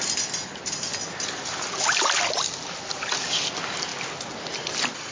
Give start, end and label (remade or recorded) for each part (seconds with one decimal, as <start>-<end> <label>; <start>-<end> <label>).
0.0-5.1 recorded